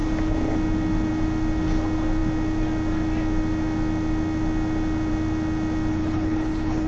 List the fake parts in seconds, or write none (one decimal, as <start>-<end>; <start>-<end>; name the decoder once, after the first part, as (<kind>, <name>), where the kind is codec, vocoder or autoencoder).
5.9-6.9 (codec, HILCodec)